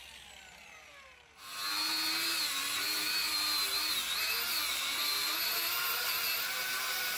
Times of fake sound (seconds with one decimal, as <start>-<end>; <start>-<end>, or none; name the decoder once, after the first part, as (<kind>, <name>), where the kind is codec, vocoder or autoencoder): 4.7-5.3 (vocoder, BigVGAN v2)